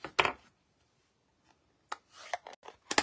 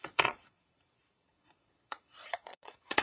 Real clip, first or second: first